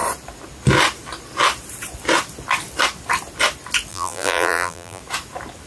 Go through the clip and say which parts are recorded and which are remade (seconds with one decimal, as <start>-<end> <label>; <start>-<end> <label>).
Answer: 0.0-3.9 recorded; 3.9-5.0 remade; 5.0-5.7 recorded